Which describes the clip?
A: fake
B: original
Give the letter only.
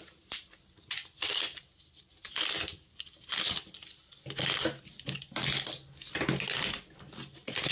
B